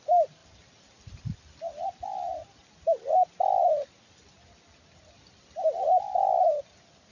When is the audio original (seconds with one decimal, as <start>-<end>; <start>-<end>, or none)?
0.0-7.1